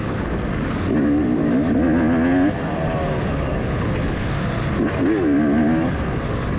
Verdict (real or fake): real